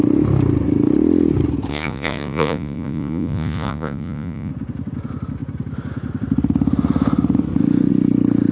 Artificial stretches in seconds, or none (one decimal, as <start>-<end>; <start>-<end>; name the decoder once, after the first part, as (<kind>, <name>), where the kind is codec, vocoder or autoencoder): 1.7-4.5 (vocoder, Vocos)